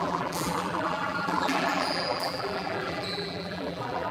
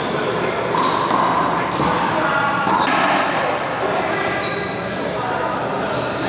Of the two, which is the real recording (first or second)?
second